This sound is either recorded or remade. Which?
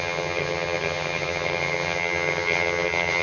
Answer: remade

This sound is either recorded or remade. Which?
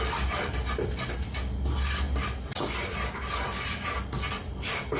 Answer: recorded